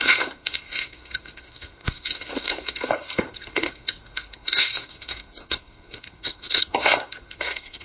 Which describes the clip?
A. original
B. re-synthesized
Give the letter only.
B